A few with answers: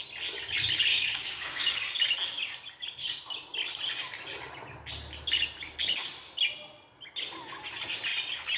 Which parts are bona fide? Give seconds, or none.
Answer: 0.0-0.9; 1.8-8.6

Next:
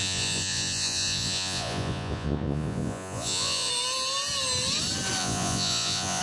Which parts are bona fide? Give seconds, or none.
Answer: 3.7-5.2

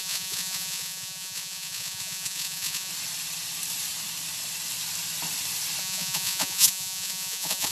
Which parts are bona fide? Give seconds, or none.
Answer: 2.9-5.8

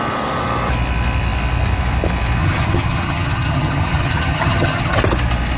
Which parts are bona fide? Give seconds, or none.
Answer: 0.0-2.4; 5.0-5.6

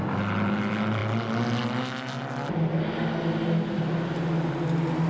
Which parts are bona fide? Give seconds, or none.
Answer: 0.0-5.1

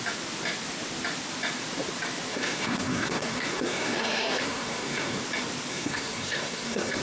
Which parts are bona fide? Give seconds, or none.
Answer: 0.0-2.3; 5.2-5.7

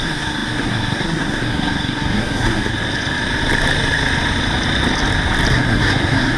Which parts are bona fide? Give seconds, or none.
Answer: 2.7-5.5

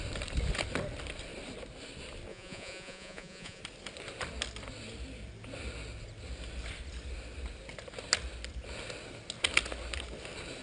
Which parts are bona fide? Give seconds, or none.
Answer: 0.0-2.3; 3.6-10.6